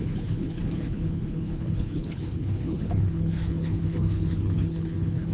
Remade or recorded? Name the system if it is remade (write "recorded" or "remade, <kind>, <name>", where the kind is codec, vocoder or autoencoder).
remade, codec, HILCodec